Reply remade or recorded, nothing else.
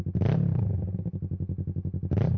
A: recorded